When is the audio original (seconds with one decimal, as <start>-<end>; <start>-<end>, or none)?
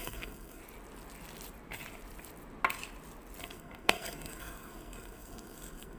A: 0.6-3.4